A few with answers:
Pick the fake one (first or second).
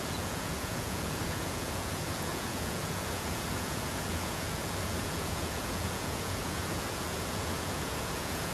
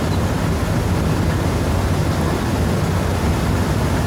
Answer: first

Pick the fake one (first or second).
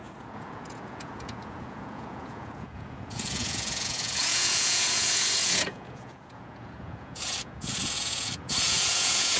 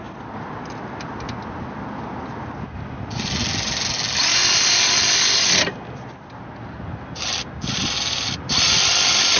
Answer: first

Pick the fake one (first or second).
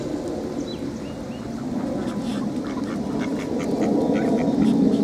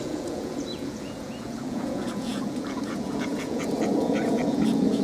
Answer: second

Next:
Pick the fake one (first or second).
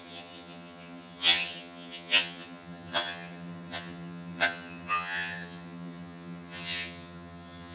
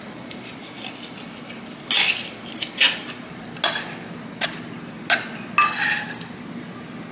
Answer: first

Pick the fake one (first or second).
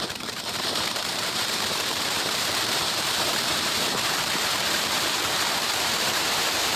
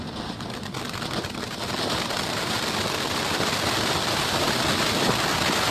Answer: first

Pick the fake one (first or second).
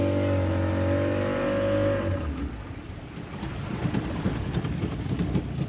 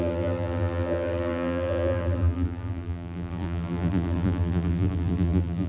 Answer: second